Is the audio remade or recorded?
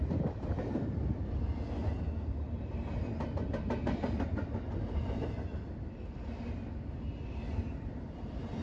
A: recorded